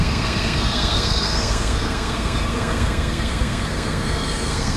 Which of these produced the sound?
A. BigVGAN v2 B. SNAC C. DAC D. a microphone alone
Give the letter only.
B